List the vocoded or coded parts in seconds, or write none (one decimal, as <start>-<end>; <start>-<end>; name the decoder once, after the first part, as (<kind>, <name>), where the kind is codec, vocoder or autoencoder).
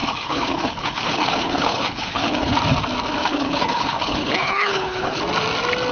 0.0-2.5 (codec, HILCodec); 3.2-5.2